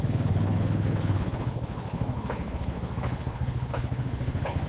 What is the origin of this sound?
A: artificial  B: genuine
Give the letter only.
A